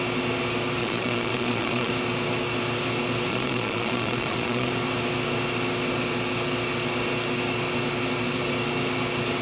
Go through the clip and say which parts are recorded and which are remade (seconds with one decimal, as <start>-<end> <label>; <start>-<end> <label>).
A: 0.0-0.8 recorded; 0.8-1.9 remade; 1.9-3.3 recorded; 3.3-4.7 remade; 4.7-9.4 recorded